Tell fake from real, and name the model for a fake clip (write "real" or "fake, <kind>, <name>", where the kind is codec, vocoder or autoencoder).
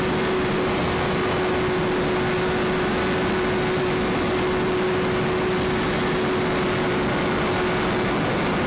real